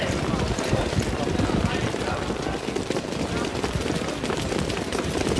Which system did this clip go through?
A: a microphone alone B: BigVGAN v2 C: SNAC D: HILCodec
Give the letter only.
A